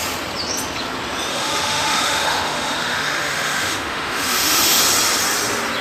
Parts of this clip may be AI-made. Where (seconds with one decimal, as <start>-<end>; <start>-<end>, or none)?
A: 1.3-4.8